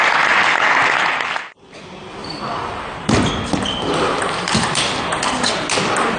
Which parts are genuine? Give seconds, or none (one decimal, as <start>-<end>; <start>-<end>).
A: 0.0-2.2; 4.2-6.2